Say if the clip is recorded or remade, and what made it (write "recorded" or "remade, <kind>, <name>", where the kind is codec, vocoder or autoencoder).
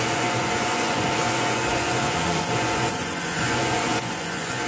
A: remade, vocoder, Vocos